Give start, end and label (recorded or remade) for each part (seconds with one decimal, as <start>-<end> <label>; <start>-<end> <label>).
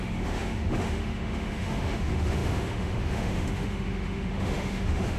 0.0-5.2 remade